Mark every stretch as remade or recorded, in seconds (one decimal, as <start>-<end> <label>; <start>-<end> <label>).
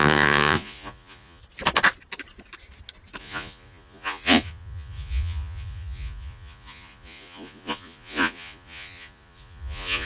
0.0-1.4 remade; 1.4-3.2 recorded; 3.2-10.1 remade